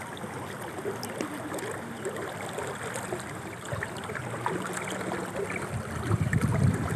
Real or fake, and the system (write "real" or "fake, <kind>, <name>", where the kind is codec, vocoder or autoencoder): real